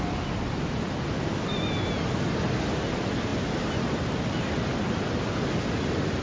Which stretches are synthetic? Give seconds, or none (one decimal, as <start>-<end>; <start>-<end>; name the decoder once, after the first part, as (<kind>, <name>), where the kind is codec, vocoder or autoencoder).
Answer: none